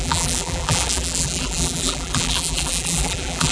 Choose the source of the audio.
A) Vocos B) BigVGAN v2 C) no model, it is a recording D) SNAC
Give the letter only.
B